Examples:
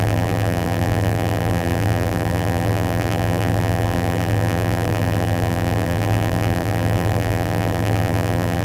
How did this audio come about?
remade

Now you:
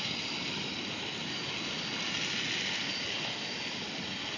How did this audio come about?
recorded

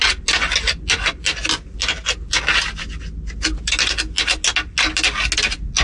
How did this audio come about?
recorded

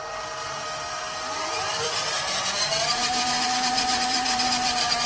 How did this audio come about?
remade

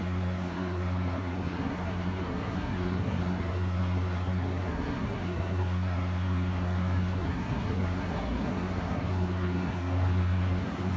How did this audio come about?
remade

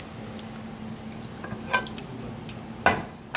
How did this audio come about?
recorded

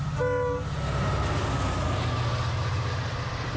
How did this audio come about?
recorded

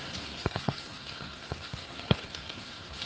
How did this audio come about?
remade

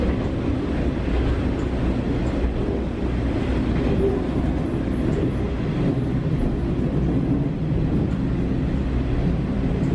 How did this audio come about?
recorded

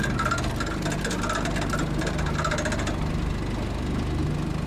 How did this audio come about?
recorded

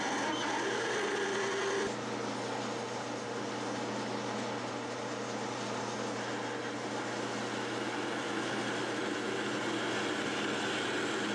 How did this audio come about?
recorded